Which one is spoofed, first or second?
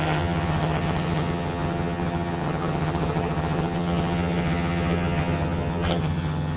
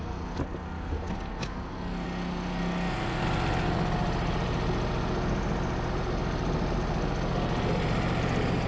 first